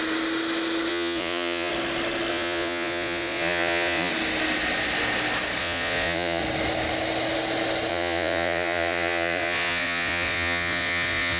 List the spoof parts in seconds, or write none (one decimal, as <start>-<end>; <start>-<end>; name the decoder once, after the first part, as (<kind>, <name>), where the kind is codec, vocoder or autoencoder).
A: 0.9-1.7 (vocoder, Vocos); 2.3-4.1; 5.6-6.4; 7.9-11.4